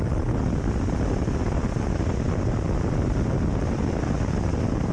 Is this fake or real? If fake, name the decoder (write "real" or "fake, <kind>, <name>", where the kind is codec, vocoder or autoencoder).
real